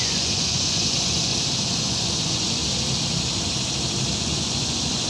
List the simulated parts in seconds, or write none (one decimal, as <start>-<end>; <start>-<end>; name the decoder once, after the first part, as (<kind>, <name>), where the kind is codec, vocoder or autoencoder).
0.0-1.3 (vocoder, Vocos); 1.8-2.6; 4.2-5.1